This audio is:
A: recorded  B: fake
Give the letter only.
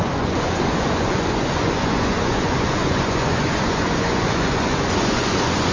B